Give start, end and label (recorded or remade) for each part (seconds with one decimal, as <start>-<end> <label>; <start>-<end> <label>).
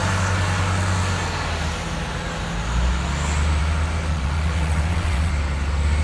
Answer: 0.0-4.1 recorded; 4.1-5.3 remade; 5.3-6.0 recorded